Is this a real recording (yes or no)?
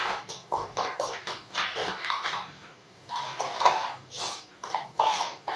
no